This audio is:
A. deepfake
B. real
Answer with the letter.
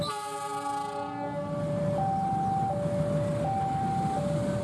B